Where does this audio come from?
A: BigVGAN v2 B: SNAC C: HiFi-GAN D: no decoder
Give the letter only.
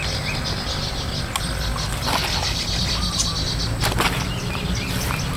D